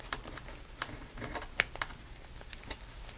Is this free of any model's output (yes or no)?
yes